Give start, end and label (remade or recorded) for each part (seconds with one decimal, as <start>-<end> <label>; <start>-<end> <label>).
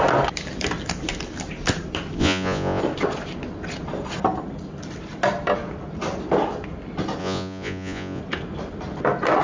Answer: 0.0-2.2 recorded; 2.2-2.8 remade; 2.8-7.2 recorded; 7.2-8.2 remade; 8.2-9.4 recorded